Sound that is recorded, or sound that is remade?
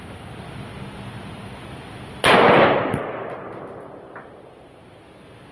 recorded